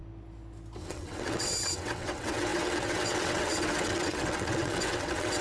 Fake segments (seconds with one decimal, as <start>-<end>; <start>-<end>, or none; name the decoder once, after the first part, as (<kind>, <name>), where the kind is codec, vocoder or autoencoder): 0.8-5.4 (vocoder, WaveNeXt)